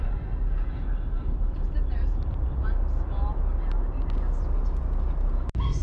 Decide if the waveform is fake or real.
real